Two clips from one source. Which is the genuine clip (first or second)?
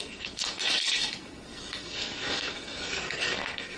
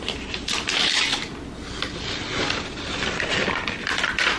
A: second